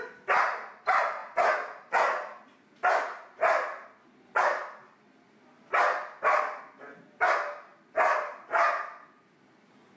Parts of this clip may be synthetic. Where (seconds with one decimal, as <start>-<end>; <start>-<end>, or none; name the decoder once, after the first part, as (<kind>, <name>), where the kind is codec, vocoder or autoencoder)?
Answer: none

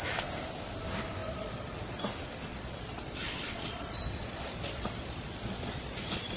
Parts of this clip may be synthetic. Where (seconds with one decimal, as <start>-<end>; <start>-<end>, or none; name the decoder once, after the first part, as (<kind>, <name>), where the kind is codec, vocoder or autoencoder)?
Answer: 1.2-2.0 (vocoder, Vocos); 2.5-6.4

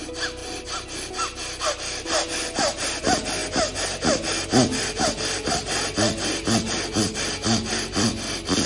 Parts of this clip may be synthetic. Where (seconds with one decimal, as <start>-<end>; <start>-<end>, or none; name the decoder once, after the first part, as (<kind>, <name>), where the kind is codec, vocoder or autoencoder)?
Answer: none

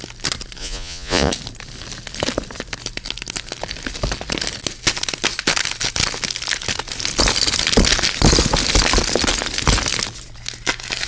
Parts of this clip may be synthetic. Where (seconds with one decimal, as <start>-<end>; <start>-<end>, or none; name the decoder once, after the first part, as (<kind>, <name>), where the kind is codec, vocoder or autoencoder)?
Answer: 0.6-1.3 (vocoder, Vocos)

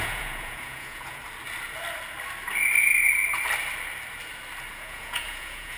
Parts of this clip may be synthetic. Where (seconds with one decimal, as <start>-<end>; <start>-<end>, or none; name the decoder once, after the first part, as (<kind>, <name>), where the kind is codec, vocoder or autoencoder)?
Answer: 0.0-1.2 (vocoder, Vocos); 4.7-5.8